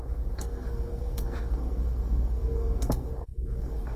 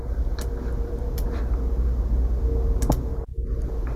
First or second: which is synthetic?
first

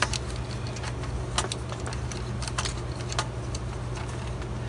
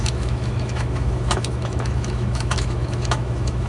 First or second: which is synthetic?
second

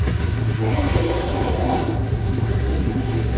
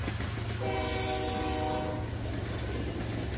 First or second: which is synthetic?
first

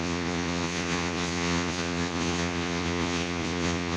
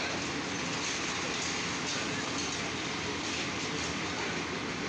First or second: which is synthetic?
first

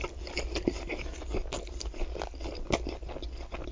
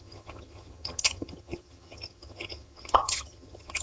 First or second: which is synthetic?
second